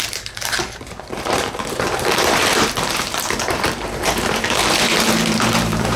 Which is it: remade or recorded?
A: remade